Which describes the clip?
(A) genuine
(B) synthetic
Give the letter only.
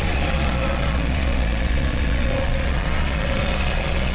B